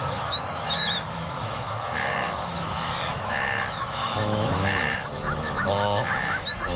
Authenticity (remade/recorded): remade